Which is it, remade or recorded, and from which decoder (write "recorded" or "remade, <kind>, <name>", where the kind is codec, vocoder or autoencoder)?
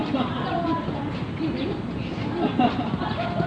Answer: recorded